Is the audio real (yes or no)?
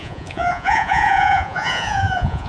no